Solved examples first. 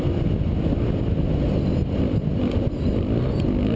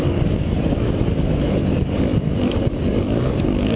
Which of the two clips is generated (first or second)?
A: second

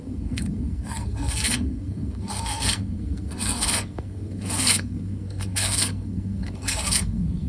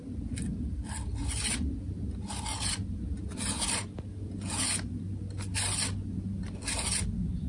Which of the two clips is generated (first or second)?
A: first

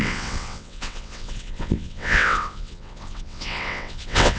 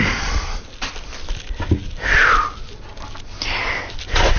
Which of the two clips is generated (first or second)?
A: first